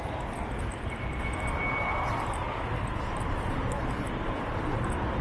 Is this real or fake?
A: real